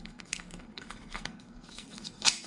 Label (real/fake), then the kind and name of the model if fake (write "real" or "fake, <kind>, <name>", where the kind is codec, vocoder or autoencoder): fake, codec, SNAC